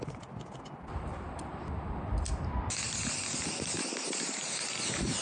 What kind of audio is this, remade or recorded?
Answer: recorded